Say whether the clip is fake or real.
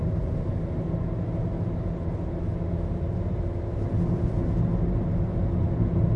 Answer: real